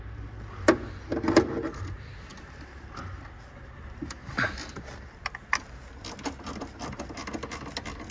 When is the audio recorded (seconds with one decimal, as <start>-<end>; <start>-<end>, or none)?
0.0-2.3; 2.8-8.1